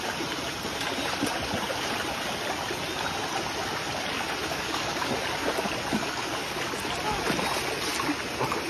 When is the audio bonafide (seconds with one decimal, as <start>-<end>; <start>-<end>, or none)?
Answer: 0.0-4.5; 5.1-6.0; 6.7-8.7